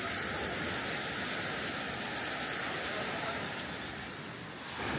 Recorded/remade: recorded